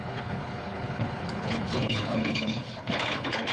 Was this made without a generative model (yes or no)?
no